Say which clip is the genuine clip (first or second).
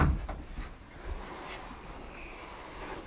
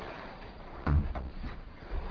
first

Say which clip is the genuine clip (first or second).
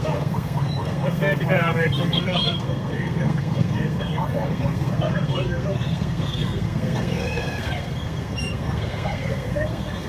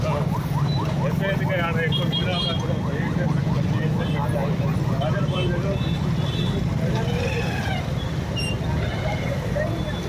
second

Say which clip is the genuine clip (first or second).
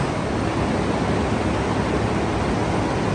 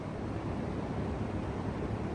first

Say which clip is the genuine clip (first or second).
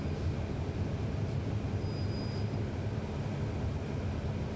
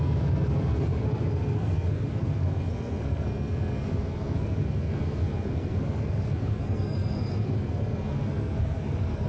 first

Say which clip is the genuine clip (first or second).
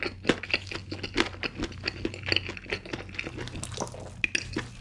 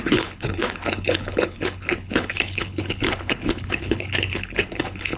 first